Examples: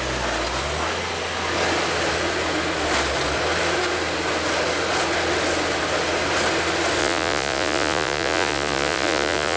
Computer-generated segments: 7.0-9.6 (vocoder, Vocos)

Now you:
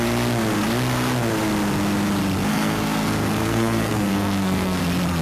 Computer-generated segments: 2.5-4.8 (codec, SNAC)

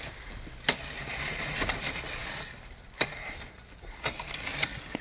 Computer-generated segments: none